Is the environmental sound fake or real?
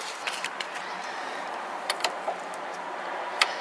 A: fake